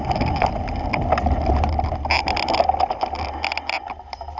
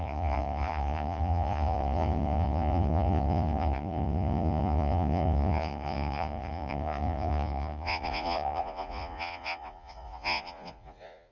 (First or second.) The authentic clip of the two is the first